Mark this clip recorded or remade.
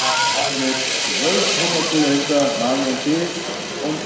recorded